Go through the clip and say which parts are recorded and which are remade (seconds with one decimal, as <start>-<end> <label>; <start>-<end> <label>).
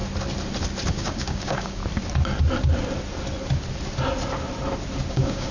0.0-0.9 recorded; 0.9-1.8 remade; 1.8-5.1 recorded; 5.1-5.5 remade